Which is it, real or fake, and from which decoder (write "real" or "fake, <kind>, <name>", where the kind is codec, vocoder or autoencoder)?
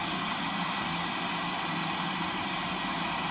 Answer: fake, vocoder, BigVGAN v2